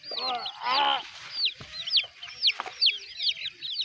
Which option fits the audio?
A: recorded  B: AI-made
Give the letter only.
A